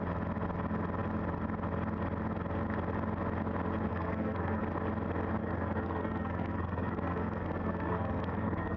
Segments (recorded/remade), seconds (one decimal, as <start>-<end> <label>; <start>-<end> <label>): 0.0-3.9 recorded; 3.9-4.6 remade; 4.6-5.4 recorded; 5.4-8.8 remade